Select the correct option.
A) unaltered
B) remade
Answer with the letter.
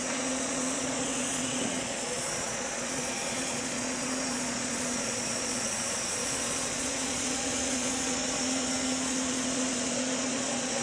B